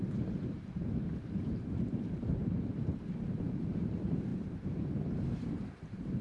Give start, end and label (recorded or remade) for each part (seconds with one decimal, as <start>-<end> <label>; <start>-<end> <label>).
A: 0.0-2.4 remade; 2.4-3.1 recorded; 3.1-6.2 remade